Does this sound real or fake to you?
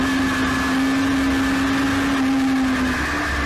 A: real